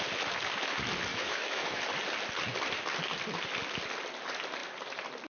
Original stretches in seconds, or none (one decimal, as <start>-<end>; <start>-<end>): 0.0-1.1; 1.8-5.4

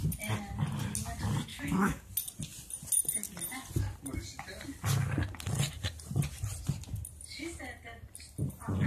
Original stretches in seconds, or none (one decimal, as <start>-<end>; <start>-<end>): 0.0-1.5; 2.1-8.9

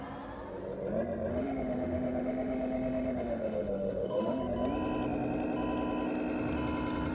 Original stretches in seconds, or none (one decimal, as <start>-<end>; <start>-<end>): 0.0-1.3; 4.4-7.1

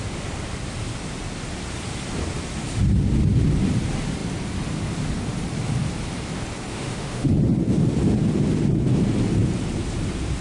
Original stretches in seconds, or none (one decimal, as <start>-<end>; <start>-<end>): 0.0-6.7; 7.3-10.4

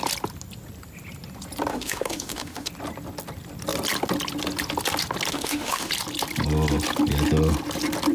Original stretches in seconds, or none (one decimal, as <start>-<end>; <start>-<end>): 0.0-1.7; 2.7-5.3; 5.9-8.1

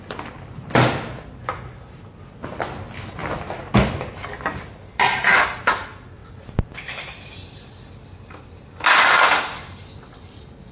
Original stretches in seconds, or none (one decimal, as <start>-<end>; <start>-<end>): 0.0-10.7

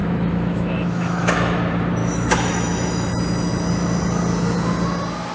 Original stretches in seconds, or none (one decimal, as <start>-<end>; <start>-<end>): 1.6-2.0; 3.1-5.3

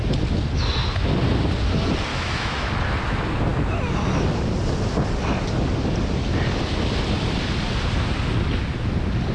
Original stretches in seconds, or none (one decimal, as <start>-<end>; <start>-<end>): 0.0-2.1; 2.7-9.3